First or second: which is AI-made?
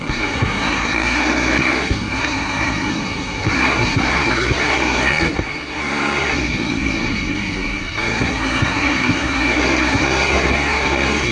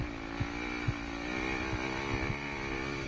first